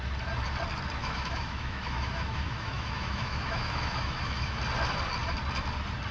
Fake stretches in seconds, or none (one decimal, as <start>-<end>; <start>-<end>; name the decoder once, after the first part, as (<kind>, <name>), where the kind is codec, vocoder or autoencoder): 1.0-4.6 (autoencoder, DAC-VAE)